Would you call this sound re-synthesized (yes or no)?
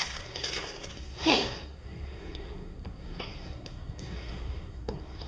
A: yes